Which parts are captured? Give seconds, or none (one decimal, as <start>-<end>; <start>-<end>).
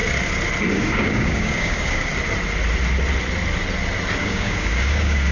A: 0.0-0.7; 2.1-4.2